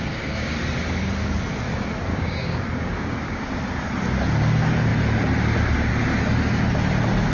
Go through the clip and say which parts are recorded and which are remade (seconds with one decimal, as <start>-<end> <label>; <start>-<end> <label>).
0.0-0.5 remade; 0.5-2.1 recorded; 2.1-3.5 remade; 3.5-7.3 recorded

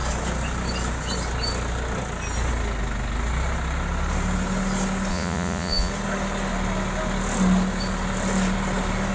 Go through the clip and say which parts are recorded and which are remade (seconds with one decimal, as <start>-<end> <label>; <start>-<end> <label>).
0.0-5.1 recorded; 5.1-5.9 remade; 5.9-9.1 recorded

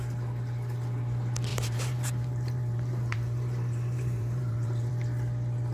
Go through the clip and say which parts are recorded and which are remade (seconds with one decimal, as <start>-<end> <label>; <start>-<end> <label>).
0.0-1.5 recorded; 1.5-4.9 remade; 4.9-5.7 recorded

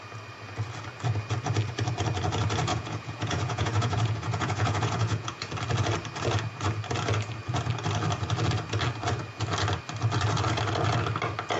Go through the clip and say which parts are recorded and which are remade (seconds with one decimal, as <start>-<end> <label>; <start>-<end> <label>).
0.0-2.7 recorded; 2.7-5.5 remade; 5.5-11.6 recorded

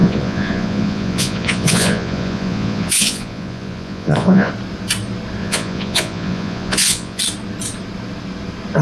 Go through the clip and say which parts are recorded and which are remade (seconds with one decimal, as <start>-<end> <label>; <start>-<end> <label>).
0.0-4.5 remade; 4.5-5.4 recorded; 5.4-7.2 remade; 7.2-8.8 recorded

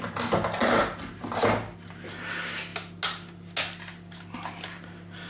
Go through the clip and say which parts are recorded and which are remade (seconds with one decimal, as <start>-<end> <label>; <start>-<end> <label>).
0.0-0.6 recorded; 0.6-1.1 remade; 1.1-5.3 recorded